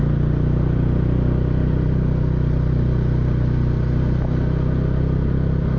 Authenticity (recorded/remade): recorded